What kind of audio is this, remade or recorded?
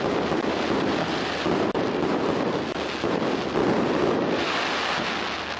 recorded